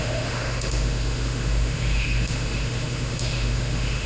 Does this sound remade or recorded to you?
remade